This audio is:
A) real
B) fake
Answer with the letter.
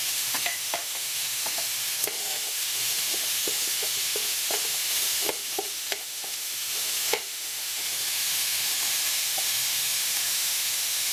B